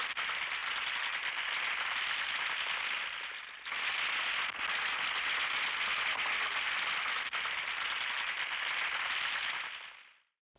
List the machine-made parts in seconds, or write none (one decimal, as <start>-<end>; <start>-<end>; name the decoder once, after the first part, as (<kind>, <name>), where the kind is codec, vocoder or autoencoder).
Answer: none